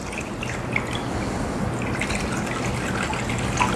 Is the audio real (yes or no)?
yes